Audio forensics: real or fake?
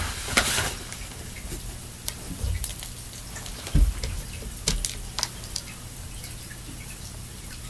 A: real